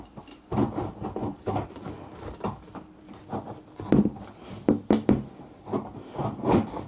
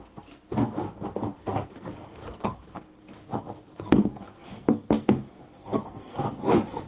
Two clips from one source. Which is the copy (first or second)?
second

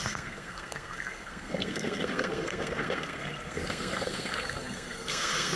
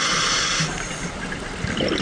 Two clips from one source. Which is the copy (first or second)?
first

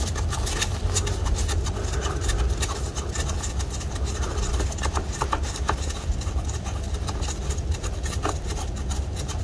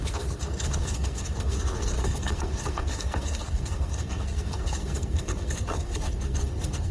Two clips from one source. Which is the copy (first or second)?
second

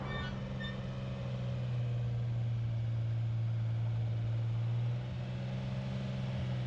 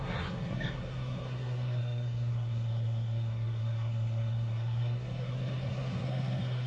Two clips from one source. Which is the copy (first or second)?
second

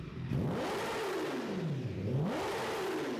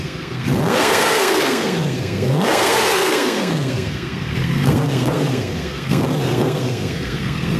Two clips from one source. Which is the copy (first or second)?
second